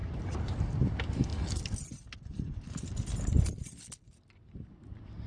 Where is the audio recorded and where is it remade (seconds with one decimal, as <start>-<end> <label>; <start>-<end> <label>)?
0.0-0.6 remade; 0.6-5.3 recorded